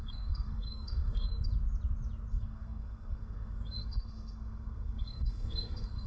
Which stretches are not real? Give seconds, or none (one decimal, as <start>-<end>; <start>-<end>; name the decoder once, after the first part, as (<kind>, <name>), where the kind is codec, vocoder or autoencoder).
0.0-1.3 (codec, SNAC); 2.3-6.1